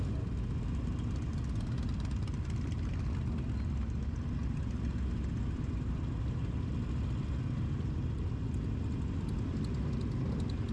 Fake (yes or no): no